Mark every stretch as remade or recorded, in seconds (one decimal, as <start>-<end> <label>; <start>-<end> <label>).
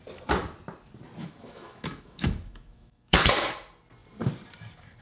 0.0-1.2 recorded; 1.2-3.3 remade; 3.3-5.0 recorded